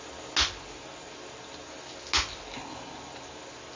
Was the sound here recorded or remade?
recorded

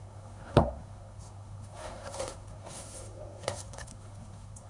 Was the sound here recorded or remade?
remade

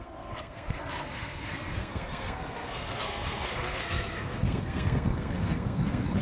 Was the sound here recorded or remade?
remade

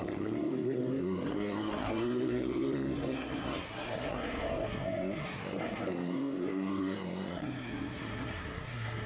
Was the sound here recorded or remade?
remade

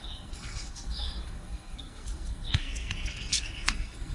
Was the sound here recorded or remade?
remade